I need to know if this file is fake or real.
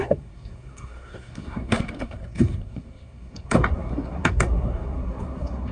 fake